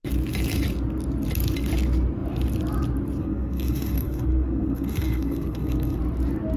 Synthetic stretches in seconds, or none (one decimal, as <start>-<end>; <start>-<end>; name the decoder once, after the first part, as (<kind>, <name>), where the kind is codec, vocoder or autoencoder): 3.2-6.0 (codec, SNAC)